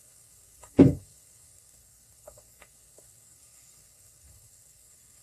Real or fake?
fake